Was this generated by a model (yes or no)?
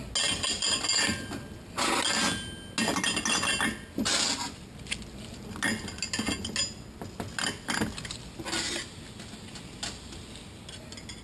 no